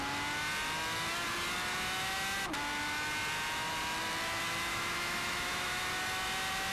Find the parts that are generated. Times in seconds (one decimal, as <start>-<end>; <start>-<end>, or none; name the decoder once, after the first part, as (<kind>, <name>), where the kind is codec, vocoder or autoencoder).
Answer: 4.7-5.8 (autoencoder, DAC-VAE)